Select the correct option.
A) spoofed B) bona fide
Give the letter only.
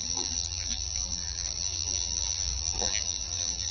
A